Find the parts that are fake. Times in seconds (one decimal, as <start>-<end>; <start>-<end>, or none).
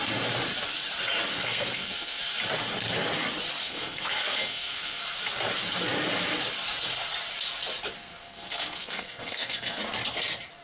1.3-2.2; 3.6-5.0; 8.0-9.8